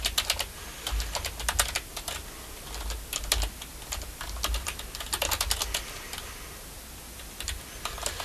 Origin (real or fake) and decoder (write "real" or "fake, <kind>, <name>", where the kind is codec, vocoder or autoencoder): real